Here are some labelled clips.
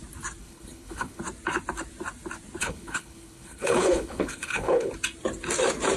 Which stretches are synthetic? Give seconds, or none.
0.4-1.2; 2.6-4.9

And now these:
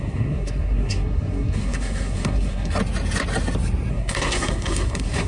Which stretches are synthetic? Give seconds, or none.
0.0-2.8; 3.9-5.3

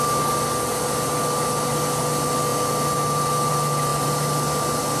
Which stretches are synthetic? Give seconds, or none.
none

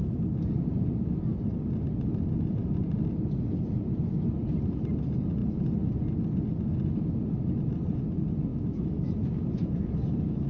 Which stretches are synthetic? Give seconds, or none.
8.5-10.5

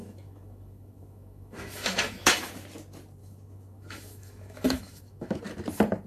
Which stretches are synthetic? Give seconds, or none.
0.0-2.5; 3.2-5.4